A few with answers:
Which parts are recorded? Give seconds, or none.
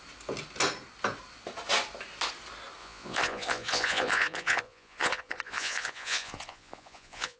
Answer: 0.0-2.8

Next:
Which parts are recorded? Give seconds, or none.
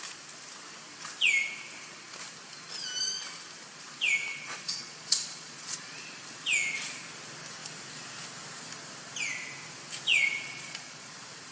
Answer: 0.0-4.3; 6.0-10.1; 11.1-11.5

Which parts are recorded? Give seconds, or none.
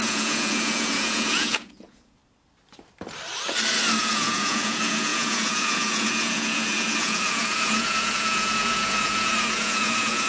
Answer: 2.2-4.0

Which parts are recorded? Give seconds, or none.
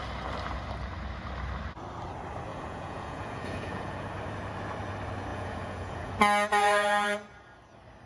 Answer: 0.0-2.5; 4.1-5.3; 6.1-6.5; 7.6-8.1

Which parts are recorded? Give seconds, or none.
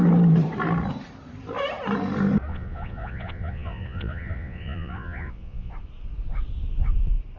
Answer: 0.0-2.5; 5.7-7.4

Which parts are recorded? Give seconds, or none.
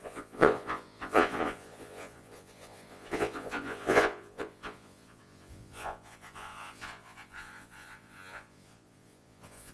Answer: none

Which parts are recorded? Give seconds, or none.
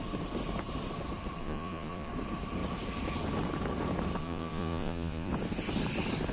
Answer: 0.0-1.4; 2.1-4.2; 5.3-6.3